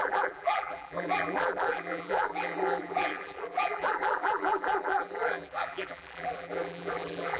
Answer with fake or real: fake